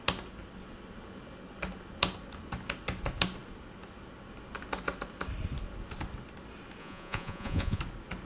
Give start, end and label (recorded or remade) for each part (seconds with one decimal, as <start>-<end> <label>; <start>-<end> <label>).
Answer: 0.0-6.8 recorded; 6.8-7.8 remade; 7.8-8.3 recorded